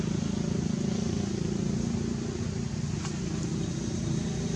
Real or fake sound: real